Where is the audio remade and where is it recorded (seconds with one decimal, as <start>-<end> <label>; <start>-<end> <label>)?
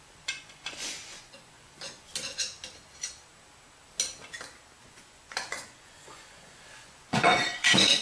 0.0-2.1 remade; 2.1-4.8 recorded; 4.8-8.0 remade